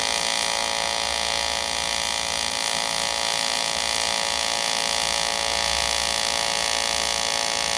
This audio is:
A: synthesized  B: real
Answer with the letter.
B